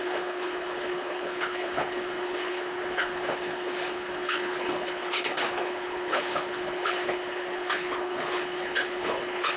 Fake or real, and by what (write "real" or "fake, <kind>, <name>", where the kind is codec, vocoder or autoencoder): fake, codec, HILCodec